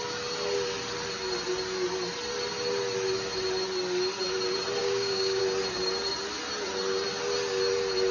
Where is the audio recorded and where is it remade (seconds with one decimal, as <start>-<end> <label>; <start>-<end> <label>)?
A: 0.0-4.8 recorded; 4.8-5.4 remade; 5.4-8.1 recorded